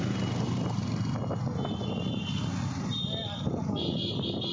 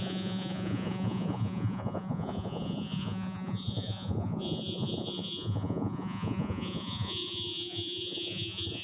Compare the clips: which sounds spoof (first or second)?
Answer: second